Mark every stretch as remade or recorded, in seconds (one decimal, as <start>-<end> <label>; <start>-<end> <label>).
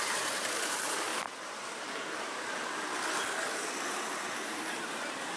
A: 0.0-1.1 remade; 1.1-4.3 recorded; 4.3-5.4 remade